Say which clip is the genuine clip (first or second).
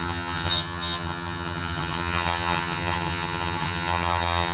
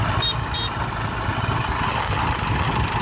second